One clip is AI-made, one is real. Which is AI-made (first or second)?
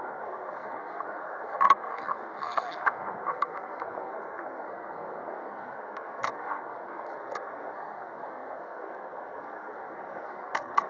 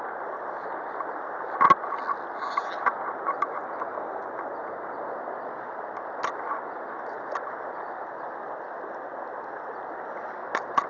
first